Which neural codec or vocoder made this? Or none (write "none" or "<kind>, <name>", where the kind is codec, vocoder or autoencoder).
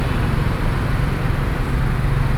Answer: vocoder, BigVGAN v2